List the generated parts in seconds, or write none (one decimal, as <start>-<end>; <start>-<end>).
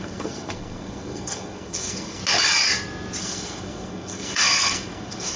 0.0-2.2; 3.2-5.4